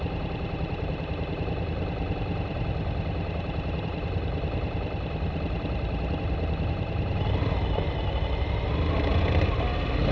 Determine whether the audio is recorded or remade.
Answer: recorded